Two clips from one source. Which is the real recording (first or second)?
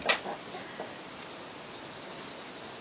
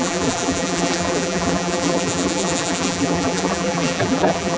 first